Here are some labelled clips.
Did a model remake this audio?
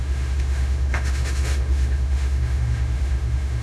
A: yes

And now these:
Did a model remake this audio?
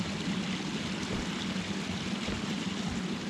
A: no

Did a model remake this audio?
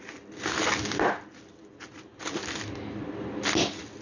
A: no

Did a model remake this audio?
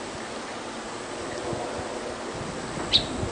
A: no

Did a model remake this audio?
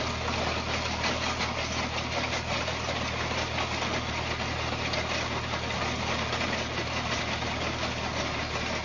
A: no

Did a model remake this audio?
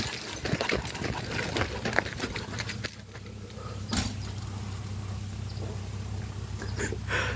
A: no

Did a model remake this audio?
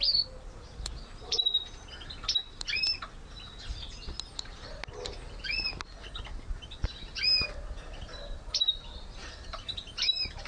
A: no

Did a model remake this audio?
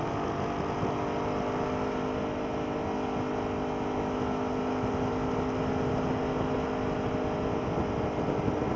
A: no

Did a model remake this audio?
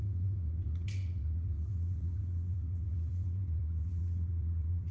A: yes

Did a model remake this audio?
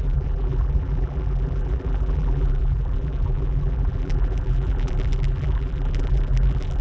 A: yes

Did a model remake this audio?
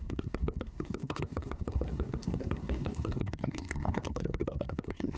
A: yes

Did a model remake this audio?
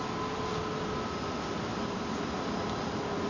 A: no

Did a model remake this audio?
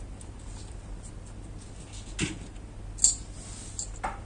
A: no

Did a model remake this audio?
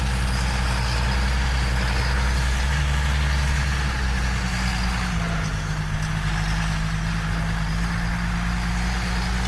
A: no